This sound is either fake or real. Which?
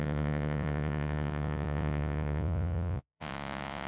fake